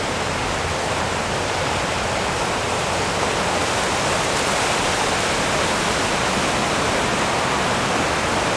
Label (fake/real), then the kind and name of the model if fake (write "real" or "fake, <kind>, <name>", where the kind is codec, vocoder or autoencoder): real